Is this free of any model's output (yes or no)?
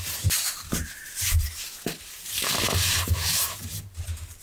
no